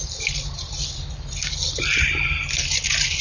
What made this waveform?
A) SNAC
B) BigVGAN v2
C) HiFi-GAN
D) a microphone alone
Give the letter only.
D